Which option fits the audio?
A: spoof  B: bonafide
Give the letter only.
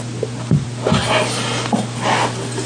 B